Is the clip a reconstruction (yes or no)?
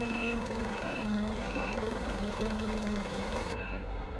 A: yes